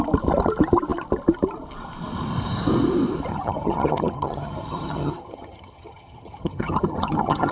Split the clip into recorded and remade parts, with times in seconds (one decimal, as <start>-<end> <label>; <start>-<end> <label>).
0.0-3.3 recorded; 3.3-7.5 remade